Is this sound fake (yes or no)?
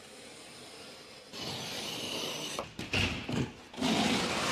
no